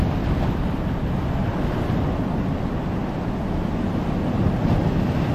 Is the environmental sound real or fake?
real